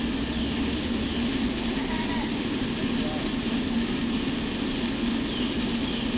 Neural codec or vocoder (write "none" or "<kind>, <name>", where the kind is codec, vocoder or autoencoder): none